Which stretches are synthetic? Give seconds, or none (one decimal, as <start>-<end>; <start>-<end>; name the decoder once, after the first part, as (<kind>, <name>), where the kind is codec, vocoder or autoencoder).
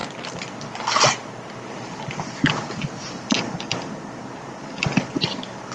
none